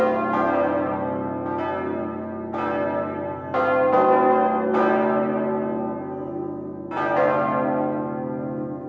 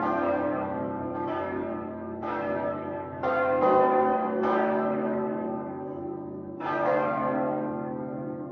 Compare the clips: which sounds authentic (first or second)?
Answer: first